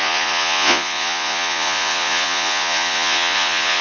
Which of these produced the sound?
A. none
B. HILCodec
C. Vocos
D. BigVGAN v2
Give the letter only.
C